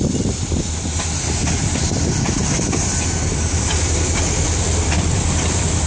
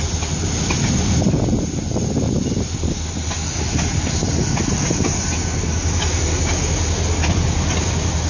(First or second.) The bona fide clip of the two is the second